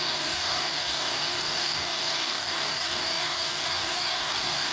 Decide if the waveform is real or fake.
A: fake